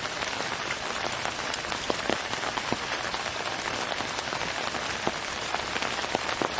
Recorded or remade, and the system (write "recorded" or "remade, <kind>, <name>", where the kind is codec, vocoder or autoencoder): remade, vocoder, BigVGAN v2